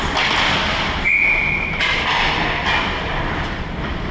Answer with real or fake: real